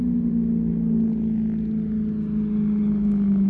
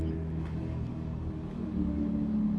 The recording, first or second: first